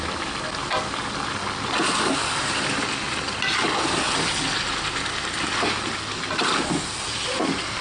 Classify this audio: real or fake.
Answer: real